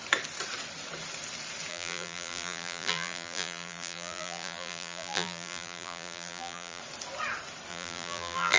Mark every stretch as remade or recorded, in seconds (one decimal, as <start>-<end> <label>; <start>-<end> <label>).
0.0-1.7 recorded; 1.7-6.8 remade; 6.8-7.7 recorded; 7.7-8.6 remade

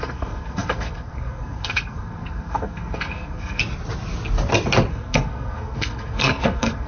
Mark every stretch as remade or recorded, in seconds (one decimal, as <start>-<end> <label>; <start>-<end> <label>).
0.0-3.6 remade; 3.6-4.9 recorded; 4.9-6.9 remade

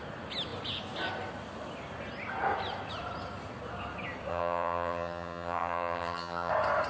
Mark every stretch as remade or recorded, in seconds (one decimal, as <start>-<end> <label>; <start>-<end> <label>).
0.0-4.3 recorded; 4.3-6.5 remade; 6.5-6.9 recorded

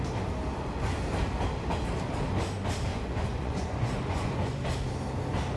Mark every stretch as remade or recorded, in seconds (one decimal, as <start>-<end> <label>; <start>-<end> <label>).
0.0-2.9 recorded; 2.9-4.6 remade; 4.6-5.6 recorded

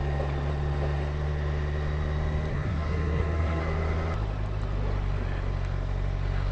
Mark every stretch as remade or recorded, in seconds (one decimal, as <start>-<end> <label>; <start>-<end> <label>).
0.0-2.5 recorded; 2.5-3.6 remade; 3.6-6.5 recorded

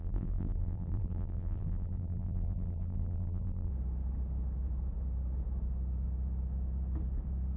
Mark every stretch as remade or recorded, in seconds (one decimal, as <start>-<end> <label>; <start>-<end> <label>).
0.0-3.7 remade; 3.7-7.6 recorded

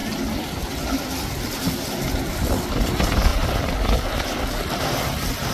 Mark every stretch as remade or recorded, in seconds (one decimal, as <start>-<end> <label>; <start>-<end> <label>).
0.0-5.5 recorded